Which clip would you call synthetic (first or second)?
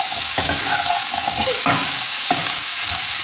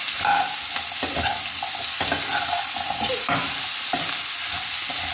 first